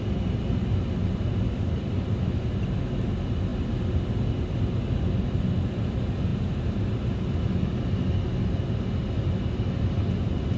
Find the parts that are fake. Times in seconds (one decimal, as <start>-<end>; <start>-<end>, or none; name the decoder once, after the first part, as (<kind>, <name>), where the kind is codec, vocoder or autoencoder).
none